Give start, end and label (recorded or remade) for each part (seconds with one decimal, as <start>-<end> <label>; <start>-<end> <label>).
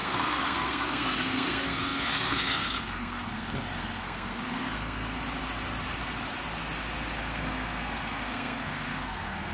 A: 0.0-5.2 remade; 5.2-7.2 recorded; 7.2-9.5 remade